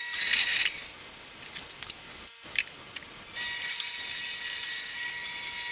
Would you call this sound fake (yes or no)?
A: no